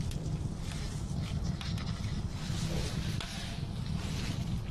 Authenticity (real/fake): real